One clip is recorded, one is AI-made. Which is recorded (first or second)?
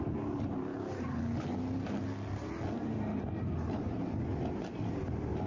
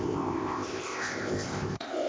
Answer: first